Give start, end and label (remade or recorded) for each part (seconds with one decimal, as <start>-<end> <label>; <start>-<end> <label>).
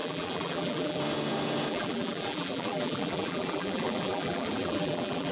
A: 0.0-1.0 remade; 1.0-1.7 recorded; 1.7-5.3 remade